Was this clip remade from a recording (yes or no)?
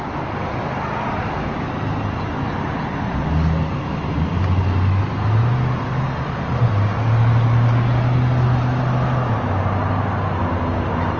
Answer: no